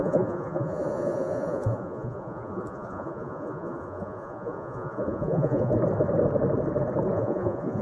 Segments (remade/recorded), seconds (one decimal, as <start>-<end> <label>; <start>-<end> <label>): 0.0-5.7 remade; 5.7-7.1 recorded; 7.1-7.8 remade